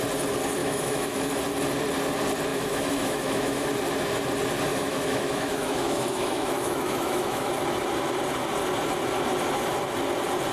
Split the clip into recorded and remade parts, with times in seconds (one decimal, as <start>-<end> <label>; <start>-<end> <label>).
0.0-0.6 recorded; 0.6-1.4 remade; 1.4-2.5 recorded; 2.5-3.7 remade; 3.7-4.7 recorded; 4.7-7.5 remade; 7.5-10.5 recorded